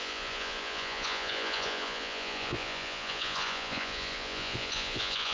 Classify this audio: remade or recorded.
remade